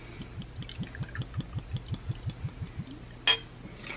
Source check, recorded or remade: recorded